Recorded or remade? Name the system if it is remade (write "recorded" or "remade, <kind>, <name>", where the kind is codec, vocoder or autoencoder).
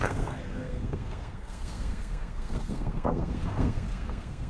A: remade, codec, SNAC